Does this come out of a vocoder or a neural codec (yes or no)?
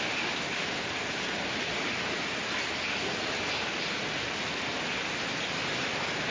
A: no